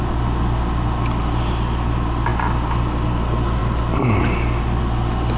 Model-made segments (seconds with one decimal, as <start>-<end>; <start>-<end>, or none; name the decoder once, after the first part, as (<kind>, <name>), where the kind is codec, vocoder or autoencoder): none

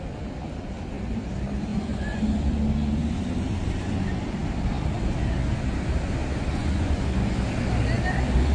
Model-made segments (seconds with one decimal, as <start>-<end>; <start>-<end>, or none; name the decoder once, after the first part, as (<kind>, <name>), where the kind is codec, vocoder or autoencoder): 1.7-2.2 (vocoder, Vocos); 6.6-7.3

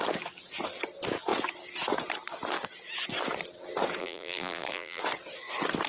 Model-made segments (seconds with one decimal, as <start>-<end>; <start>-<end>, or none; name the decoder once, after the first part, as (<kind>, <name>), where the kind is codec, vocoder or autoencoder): 4.0-5.0 (vocoder, BigVGAN v2)

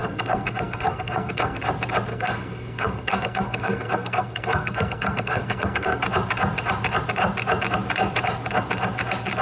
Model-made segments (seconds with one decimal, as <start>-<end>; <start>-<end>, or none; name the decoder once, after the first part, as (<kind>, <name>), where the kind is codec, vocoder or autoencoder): 0.0-1.6 (codec, SNAC); 2.1-6.0

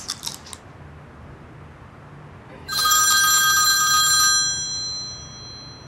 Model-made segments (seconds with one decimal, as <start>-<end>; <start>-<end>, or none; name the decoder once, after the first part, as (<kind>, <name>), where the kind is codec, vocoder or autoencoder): 2.5-3.0 (autoencoder, DAC-VAE)

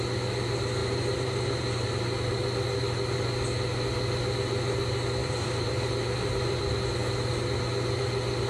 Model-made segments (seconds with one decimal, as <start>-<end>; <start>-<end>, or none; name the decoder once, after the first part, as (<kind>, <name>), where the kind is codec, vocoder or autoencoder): 0.8-2.2 (vocoder, BigVGAN v2); 5.2-6.6

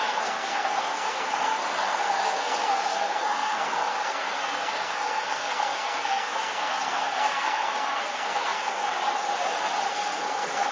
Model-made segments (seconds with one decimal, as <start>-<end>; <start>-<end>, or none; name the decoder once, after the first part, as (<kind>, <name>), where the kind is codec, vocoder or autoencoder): 0.0-8.9 (codec, SNAC); 9.9-10.7